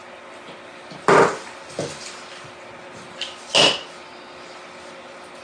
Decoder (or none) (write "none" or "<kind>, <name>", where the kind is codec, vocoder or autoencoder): none